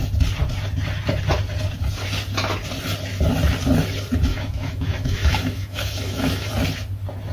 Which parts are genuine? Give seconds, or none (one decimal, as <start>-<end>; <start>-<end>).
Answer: 0.0-4.3; 6.5-7.3